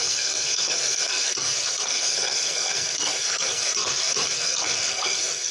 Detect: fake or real fake